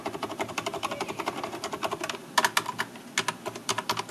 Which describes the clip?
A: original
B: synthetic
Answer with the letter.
A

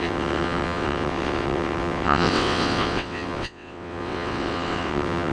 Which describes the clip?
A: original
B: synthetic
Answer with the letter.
B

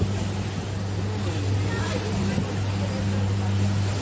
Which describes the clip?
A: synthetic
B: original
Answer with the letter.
B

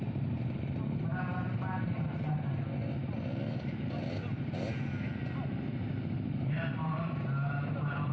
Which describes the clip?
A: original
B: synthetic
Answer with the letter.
A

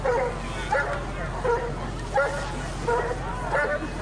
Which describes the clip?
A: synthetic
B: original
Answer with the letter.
B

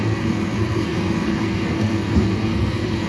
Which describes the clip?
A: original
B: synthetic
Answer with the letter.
B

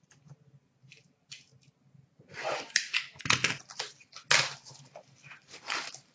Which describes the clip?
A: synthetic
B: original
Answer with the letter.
B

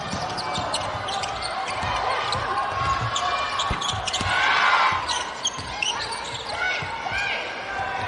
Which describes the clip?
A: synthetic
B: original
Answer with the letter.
B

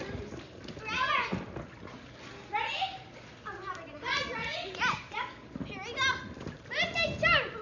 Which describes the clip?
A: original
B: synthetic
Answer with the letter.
A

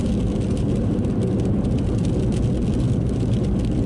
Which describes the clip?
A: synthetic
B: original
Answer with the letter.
B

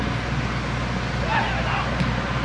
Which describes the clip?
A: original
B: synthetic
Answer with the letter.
A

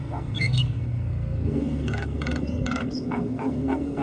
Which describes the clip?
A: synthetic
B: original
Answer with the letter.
A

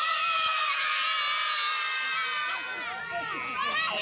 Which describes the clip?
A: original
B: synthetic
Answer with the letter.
A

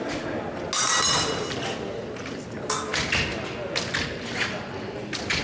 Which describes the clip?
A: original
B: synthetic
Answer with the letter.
A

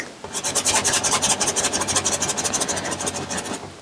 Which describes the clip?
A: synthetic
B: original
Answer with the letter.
B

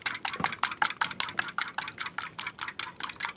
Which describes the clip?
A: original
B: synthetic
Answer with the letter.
A